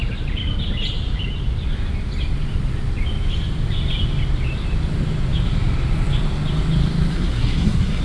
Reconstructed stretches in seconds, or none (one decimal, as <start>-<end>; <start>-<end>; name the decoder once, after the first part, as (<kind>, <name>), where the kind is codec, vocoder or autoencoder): 7.1-8.0 (codec, SNAC)